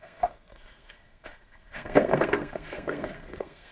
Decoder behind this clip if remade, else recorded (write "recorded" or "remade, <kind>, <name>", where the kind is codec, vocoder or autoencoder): remade, codec, SNAC